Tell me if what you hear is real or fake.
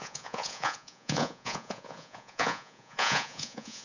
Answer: fake